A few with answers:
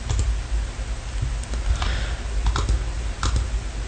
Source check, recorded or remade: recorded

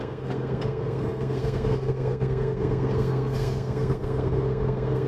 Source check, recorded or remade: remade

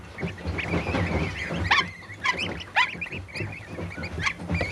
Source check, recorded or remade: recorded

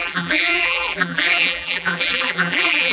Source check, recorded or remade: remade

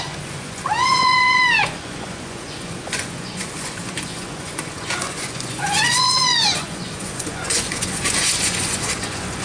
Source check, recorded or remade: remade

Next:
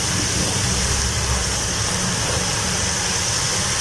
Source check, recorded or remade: remade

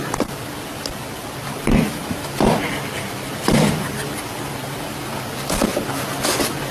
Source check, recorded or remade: recorded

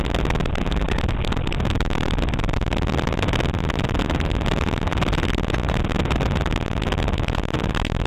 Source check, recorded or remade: recorded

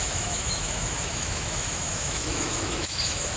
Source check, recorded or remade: remade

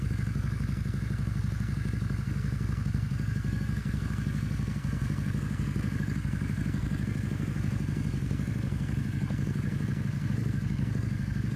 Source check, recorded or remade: remade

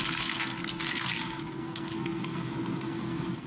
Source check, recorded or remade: remade